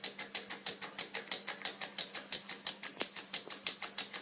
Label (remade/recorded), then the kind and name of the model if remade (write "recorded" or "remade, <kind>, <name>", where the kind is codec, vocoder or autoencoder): recorded